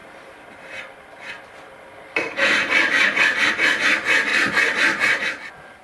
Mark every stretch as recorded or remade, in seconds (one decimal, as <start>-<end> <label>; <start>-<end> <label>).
0.0-3.5 remade; 3.5-4.3 recorded; 4.3-5.3 remade; 5.3-5.8 recorded